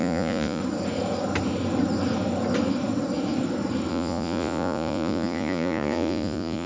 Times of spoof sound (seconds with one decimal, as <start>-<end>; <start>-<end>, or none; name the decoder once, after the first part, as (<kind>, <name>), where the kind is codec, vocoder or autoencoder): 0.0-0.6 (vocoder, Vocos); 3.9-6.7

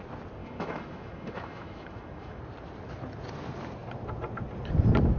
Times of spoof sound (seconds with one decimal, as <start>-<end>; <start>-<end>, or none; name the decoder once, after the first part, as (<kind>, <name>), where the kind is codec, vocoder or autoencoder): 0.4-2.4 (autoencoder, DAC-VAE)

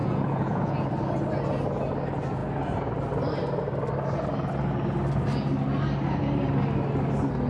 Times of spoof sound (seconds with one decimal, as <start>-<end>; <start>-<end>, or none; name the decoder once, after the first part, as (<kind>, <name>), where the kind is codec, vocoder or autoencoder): 0.0-0.9 (vocoder, Vocos)

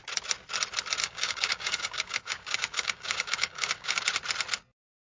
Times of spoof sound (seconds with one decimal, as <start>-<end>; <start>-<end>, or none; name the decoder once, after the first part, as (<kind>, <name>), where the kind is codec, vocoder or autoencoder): 1.0-4.0 (codec, DAC)

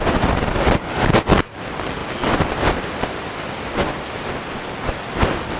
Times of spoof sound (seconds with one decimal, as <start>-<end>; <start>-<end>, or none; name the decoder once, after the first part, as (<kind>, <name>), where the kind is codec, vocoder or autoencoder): none

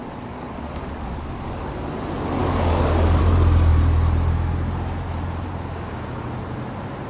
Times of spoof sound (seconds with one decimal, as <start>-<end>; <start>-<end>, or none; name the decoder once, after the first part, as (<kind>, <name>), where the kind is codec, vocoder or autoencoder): 0.0-1.6 (codec, DAC); 2.4-3.2

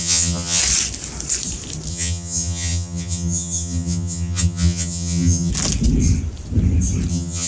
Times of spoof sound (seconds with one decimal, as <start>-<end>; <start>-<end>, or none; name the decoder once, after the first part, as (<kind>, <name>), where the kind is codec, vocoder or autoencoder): 0.0-0.6 (vocoder, HiFi-GAN); 1.9-5.5; 7.1-7.5